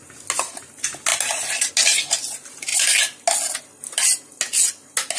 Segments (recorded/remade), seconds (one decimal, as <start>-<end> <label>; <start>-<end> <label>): 0.0-5.2 recorded